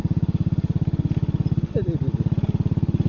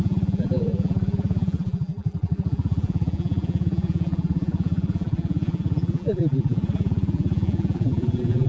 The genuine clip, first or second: first